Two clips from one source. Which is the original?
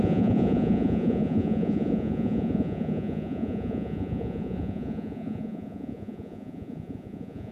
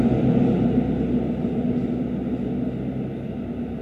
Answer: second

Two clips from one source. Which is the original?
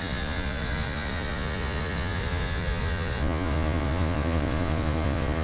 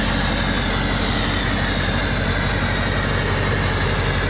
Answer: second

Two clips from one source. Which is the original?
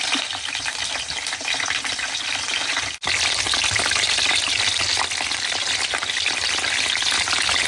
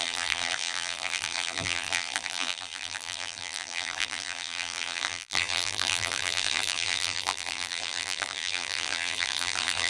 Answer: first